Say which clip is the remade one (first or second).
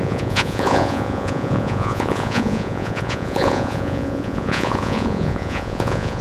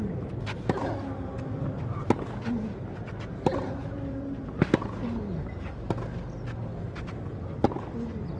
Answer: first